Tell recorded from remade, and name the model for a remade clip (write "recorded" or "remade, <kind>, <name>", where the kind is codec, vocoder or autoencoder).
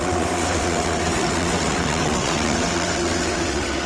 remade, vocoder, WaveNeXt